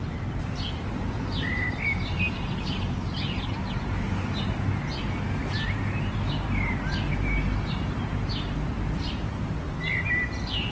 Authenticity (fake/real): real